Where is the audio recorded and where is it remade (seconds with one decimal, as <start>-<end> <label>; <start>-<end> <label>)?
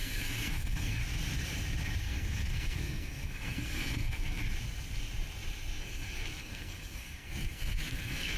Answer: 0.0-1.0 remade; 1.0-2.0 recorded; 2.0-4.4 remade; 4.4-5.8 recorded; 5.8-8.4 remade